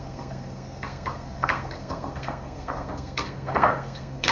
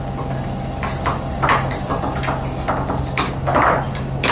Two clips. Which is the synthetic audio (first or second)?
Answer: first